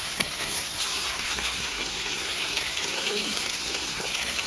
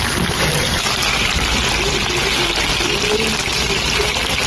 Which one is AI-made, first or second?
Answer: first